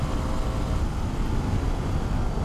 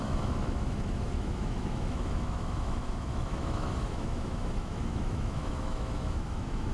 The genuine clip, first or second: first